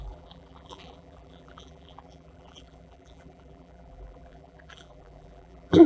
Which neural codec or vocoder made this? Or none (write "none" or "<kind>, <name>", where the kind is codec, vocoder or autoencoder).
vocoder, BigVGAN v2